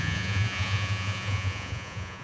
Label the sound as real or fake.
fake